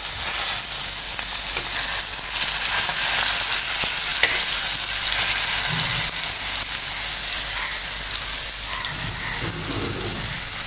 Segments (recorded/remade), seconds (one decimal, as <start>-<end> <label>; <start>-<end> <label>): 0.0-10.7 recorded